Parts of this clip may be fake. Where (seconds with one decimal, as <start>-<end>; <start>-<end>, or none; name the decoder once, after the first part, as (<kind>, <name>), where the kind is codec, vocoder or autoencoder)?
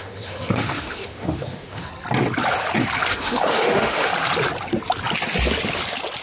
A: 0.0-1.9 (autoencoder, DAC-VAE); 3.1-4.1